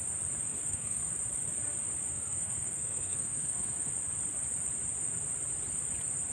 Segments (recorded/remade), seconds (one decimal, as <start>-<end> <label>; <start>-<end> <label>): 0.0-0.5 recorded; 0.5-1.1 remade; 1.1-2.1 recorded; 2.1-3.9 remade; 3.9-6.3 recorded

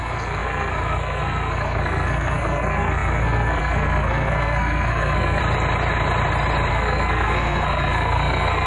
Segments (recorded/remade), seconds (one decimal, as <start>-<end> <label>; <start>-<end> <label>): 0.0-5.4 remade; 5.4-6.7 recorded; 6.7-8.7 remade

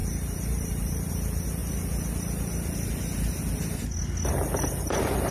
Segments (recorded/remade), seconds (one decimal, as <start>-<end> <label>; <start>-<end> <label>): 0.0-1.1 remade; 1.1-5.3 recorded

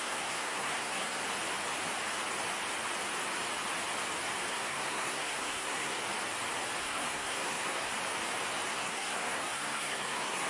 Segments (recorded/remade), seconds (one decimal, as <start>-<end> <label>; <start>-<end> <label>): 0.0-1.2 remade; 1.2-4.5 recorded; 4.5-6.0 remade; 6.0-6.8 recorded; 6.8-7.9 remade; 7.9-8.7 recorded; 8.7-10.5 remade